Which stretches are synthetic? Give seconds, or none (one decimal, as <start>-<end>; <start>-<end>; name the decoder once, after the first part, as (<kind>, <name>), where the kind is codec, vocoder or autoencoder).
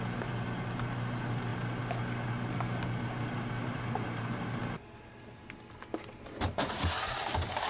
3.6-4.6 (vocoder, BigVGAN v2)